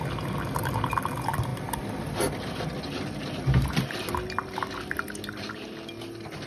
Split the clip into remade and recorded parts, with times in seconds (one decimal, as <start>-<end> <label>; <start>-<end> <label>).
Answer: 0.0-6.5 recorded